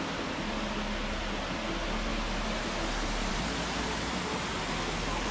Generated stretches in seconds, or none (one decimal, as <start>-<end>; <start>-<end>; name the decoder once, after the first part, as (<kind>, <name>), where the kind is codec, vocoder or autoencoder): none